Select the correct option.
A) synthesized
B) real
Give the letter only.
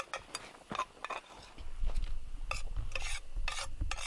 B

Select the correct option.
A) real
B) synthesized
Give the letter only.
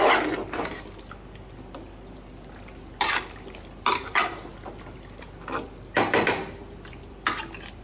A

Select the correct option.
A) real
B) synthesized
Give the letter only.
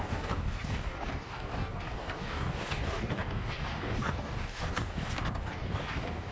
B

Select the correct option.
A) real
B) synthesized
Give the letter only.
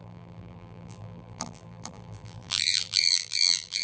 B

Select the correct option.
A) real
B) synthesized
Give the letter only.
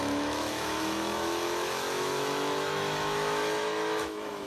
B